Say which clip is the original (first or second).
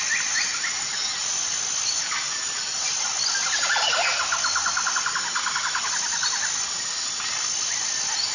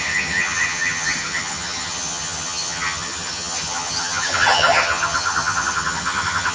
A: first